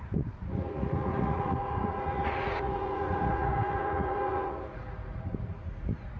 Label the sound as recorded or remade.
remade